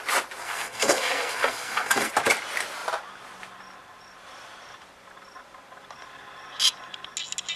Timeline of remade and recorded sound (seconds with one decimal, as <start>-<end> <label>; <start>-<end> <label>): 0.0-0.4 recorded; 0.4-2.1 remade; 2.1-7.6 recorded